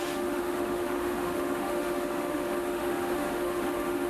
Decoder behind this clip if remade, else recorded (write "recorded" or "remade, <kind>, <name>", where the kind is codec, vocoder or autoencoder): remade, autoencoder, DAC-VAE